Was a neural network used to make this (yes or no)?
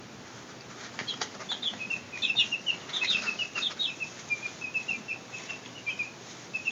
no